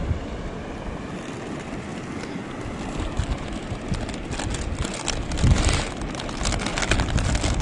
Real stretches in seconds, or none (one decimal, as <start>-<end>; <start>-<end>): 0.0-7.6